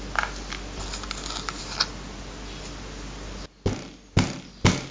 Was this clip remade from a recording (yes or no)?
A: no